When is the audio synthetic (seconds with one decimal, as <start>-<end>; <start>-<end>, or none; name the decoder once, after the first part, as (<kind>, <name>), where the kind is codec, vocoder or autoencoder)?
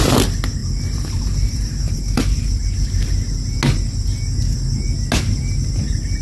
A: 0.6-2.2 (vocoder, BigVGAN v2)